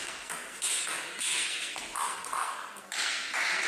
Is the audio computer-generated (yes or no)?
yes